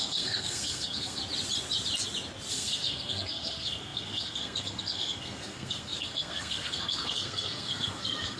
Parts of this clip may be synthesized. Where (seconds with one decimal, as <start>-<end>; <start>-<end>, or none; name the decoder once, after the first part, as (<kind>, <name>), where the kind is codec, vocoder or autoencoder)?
0.0-1.2 (codec, SNAC); 2.5-8.4